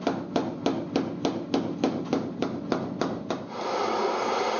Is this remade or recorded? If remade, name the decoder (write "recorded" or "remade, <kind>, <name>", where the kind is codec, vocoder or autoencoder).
recorded